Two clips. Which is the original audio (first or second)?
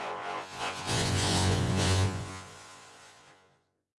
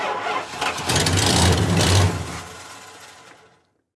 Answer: second